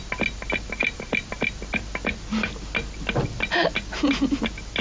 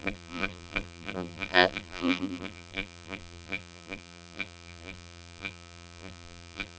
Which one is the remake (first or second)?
second